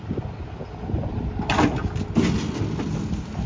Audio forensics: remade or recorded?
recorded